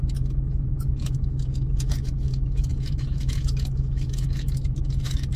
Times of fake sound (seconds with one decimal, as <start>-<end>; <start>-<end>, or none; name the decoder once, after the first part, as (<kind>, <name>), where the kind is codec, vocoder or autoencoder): 0.0-5.4 (autoencoder, DAC-VAE)